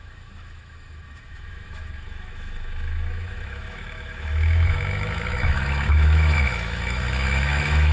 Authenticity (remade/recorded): remade